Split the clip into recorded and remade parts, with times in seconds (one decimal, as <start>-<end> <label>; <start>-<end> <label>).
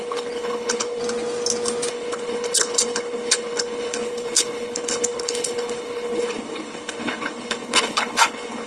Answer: 0.0-1.0 remade; 1.0-1.9 recorded; 1.9-8.7 remade